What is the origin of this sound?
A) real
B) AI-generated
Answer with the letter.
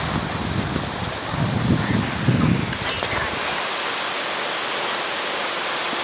A